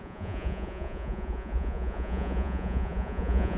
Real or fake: fake